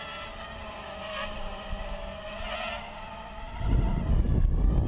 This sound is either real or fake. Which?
real